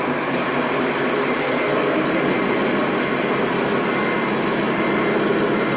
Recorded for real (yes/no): yes